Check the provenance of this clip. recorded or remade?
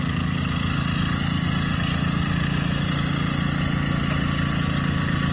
recorded